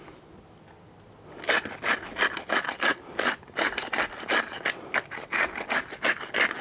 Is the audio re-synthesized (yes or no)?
no